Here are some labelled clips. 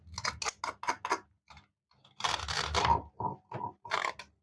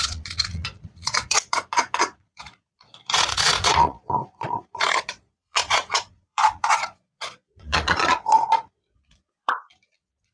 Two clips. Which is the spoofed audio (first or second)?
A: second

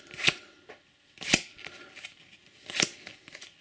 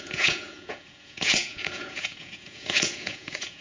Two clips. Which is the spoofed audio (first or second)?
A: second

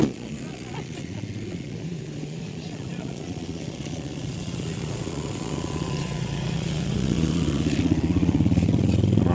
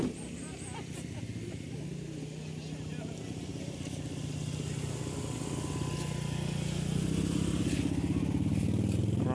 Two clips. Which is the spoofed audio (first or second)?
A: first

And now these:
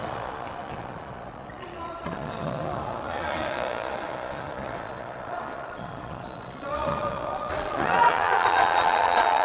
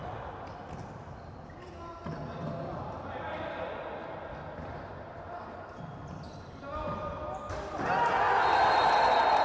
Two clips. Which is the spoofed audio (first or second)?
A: first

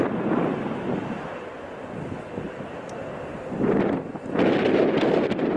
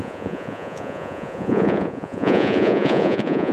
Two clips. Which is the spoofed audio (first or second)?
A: second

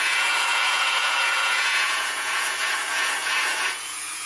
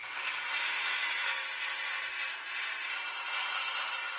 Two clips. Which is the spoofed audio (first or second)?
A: first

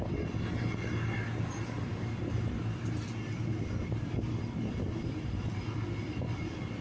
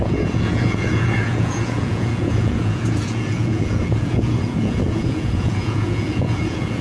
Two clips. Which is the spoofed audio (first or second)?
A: second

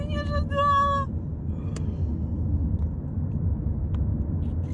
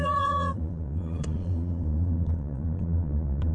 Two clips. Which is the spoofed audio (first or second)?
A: second